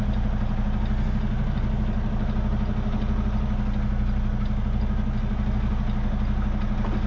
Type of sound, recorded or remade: recorded